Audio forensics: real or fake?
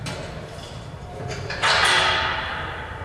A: real